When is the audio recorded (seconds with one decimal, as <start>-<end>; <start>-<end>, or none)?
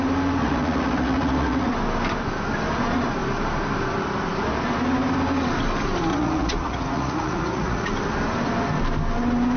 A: 0.0-0.4; 1.7-6.1; 7.9-9.6